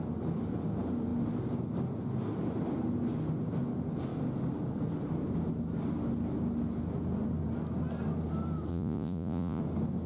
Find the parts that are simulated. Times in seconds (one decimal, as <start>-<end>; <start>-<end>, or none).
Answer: 8.7-9.6